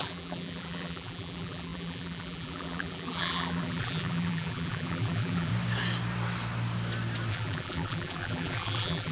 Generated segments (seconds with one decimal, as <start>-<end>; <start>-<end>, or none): 0.0-5.5; 7.3-9.1